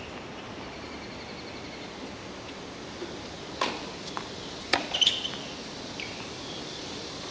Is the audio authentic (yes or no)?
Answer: yes